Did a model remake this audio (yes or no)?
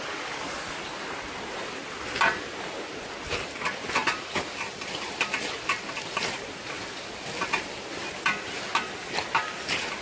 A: no